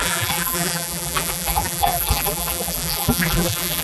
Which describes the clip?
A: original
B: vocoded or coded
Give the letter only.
B